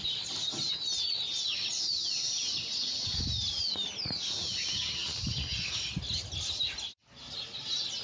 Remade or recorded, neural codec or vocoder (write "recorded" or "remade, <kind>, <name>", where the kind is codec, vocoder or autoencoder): recorded